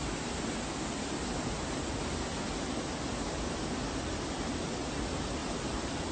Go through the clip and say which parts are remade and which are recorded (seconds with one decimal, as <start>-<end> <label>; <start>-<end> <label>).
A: 0.0-5.4 recorded; 5.4-6.1 remade